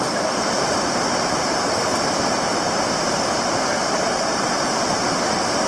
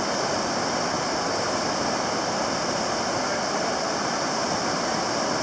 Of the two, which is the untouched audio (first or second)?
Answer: second